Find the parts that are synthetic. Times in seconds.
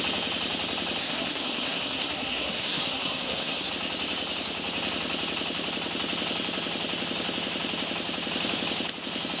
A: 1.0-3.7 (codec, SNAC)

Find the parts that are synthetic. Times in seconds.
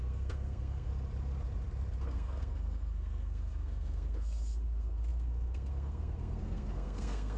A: 0.0-0.9 (codec, SNAC); 2.0-7.4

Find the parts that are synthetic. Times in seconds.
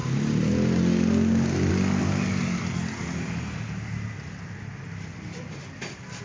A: none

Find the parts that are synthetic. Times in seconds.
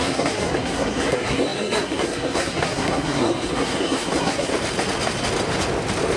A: 0.0-4.5 (codec, SNAC)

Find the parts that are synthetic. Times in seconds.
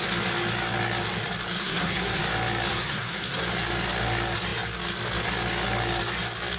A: 1.6-2.2 (codec, SNAC); 2.7-3.4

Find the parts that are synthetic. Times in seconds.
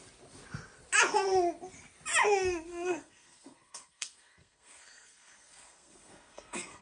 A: 2.7-6.8 (codec, SNAC)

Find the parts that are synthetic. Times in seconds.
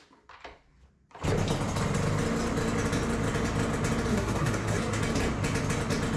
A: 4.1-5.0 (codec, SNAC)